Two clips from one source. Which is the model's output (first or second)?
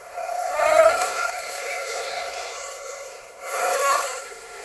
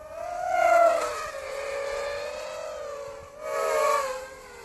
first